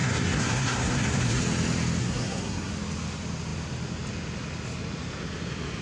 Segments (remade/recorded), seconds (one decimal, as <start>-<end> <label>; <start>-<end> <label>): 0.0-1.4 remade; 1.4-2.0 recorded; 2.0-2.7 remade; 2.7-5.8 recorded